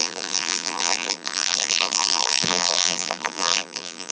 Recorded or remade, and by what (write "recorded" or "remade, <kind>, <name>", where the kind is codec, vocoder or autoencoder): remade, vocoder, BigVGAN v2